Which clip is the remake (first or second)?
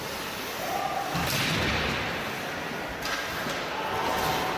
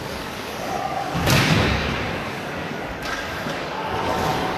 second